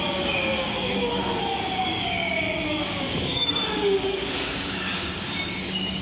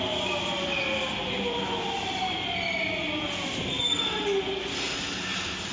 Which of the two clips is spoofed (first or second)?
first